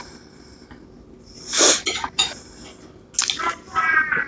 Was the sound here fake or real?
real